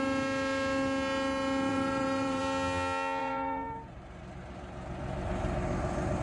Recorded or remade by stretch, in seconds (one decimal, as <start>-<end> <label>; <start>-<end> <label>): 0.0-1.7 recorded; 1.7-2.4 remade; 2.4-3.2 recorded; 3.2-4.2 remade; 4.2-6.2 recorded